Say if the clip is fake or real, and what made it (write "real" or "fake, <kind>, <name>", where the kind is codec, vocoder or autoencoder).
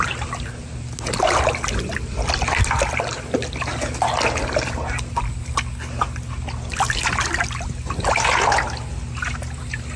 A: real